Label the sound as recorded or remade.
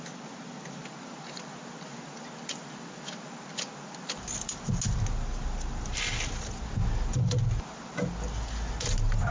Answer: recorded